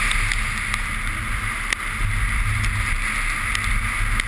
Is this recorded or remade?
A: recorded